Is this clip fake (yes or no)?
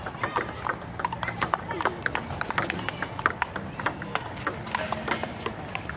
no